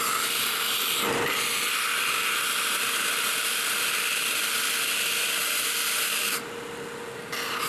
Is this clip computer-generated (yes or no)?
no